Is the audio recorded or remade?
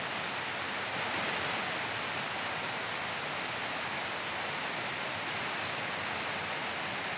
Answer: recorded